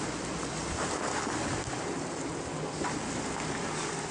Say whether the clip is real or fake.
real